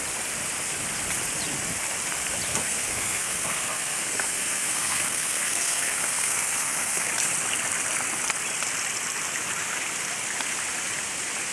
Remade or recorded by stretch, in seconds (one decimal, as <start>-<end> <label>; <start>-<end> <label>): 0.0-2.5 recorded; 2.5-7.1 remade; 7.1-11.5 recorded

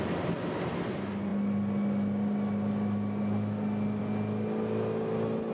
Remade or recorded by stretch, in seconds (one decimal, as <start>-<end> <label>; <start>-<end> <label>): 0.0-5.5 recorded

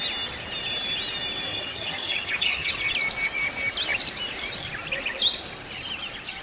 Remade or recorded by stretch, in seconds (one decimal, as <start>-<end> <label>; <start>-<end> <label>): 0.0-1.5 recorded; 1.5-2.7 remade; 2.7-6.4 recorded

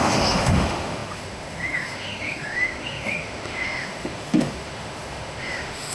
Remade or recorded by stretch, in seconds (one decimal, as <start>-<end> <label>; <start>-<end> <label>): 0.0-5.9 remade

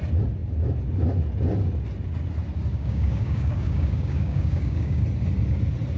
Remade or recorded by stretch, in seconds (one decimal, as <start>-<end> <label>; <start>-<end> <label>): 0.0-2.7 recorded; 2.7-5.0 remade; 5.0-6.0 recorded